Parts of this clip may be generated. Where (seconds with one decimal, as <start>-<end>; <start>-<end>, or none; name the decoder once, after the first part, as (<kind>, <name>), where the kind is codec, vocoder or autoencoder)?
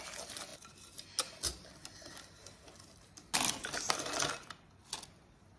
none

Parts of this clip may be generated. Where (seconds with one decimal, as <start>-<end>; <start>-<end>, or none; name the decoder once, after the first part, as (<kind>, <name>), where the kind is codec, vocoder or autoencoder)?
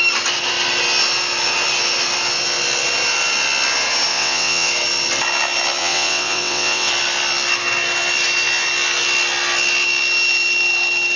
4.1-4.7 (vocoder, WaveNeXt); 5.8-6.9